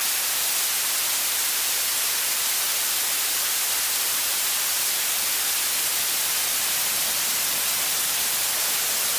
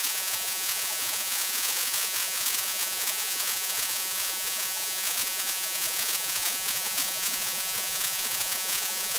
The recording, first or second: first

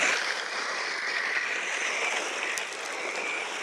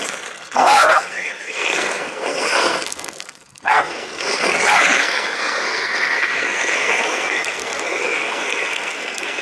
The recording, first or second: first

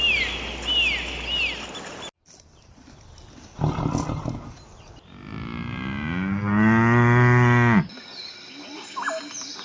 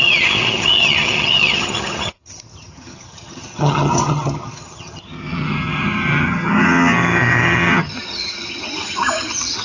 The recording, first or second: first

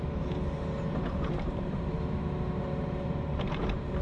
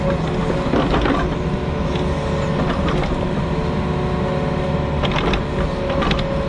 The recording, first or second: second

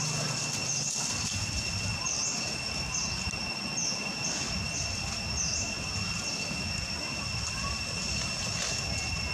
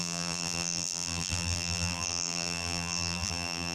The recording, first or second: first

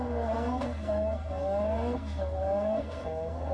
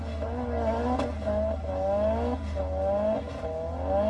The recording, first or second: second